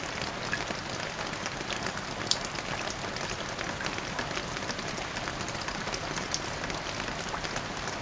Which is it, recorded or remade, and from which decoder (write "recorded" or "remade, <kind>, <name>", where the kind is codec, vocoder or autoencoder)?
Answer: recorded